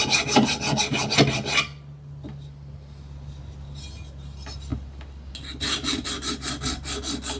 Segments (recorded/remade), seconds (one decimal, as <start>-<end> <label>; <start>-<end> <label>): 0.0-7.4 recorded